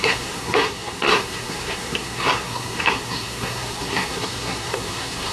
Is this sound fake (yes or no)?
yes